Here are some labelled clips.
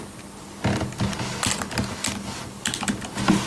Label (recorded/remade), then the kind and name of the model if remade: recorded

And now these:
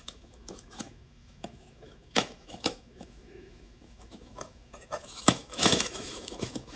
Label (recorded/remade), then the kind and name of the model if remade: remade, autoencoder, DAC-VAE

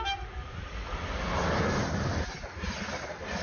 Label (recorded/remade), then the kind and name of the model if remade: recorded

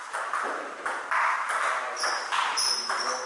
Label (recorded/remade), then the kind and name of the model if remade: recorded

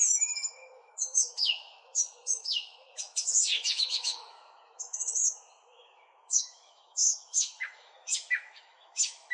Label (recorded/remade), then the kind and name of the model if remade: remade, autoencoder, DAC-VAE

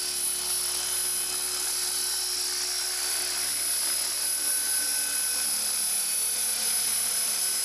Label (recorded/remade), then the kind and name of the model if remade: recorded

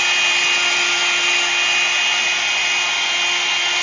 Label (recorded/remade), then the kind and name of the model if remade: recorded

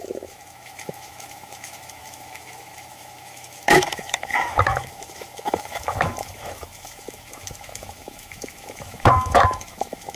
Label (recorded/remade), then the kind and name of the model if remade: remade, autoencoder, DAC-VAE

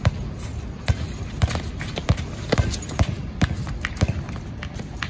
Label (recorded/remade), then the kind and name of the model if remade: recorded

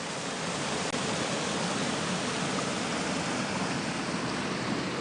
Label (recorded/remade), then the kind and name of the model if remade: recorded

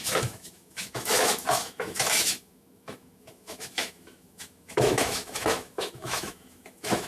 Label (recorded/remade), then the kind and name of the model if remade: remade, autoencoder, DAC-VAE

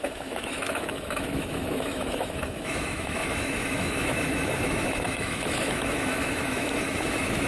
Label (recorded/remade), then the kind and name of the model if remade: remade, autoencoder, DAC-VAE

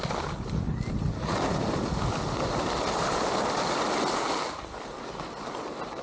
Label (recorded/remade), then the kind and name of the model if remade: recorded